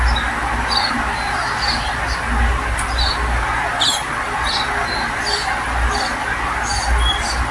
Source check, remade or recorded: recorded